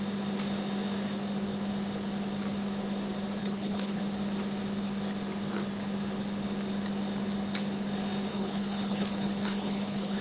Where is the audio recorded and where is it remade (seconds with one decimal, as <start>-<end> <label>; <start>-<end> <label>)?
0.0-3.4 recorded; 3.4-4.0 remade; 4.0-8.3 recorded; 8.3-10.2 remade